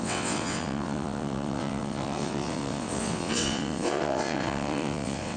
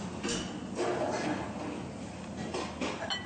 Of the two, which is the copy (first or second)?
first